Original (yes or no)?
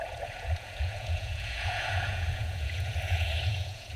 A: no